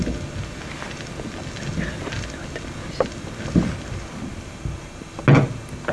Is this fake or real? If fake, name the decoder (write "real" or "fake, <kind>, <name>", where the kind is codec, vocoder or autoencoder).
real